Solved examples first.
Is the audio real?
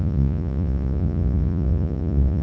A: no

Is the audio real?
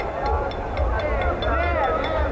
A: yes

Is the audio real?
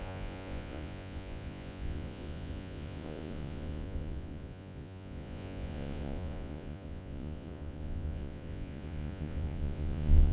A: no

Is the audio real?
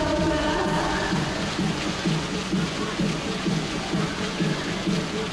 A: no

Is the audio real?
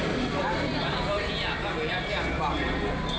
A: yes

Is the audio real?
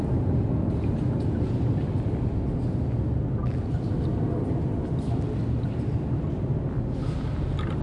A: yes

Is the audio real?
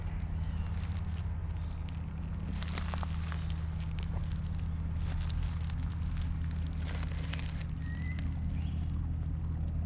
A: yes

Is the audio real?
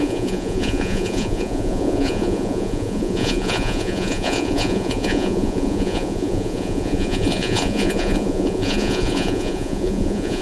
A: no